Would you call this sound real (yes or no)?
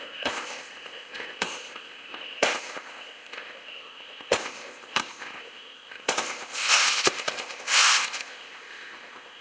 no